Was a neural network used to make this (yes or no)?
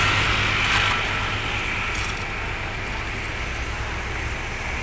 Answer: no